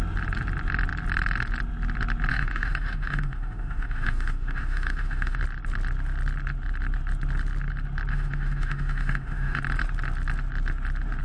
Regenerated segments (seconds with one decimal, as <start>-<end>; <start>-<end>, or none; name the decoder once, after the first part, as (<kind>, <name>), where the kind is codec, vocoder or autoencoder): 2.3-5.4 (autoencoder, DAC-VAE); 8.1-9.6